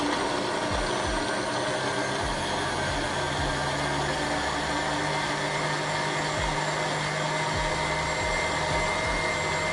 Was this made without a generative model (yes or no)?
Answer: yes